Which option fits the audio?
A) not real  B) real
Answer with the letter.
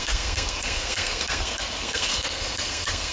A